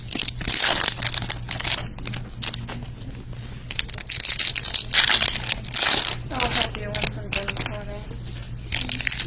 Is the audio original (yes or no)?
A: yes